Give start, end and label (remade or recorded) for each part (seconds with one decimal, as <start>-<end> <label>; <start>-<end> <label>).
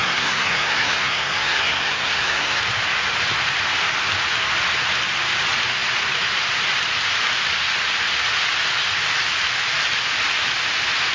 0.0-2.6 remade; 2.6-11.1 recorded